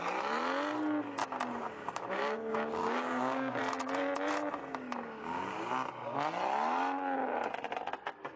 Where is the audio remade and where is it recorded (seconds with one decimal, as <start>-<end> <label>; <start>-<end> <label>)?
0.0-1.2 recorded; 1.2-3.6 remade; 3.6-4.7 recorded; 4.7-5.7 remade; 5.7-8.4 recorded